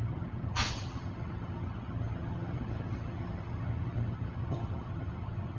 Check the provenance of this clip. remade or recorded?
remade